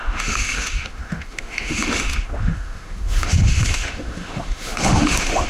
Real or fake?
fake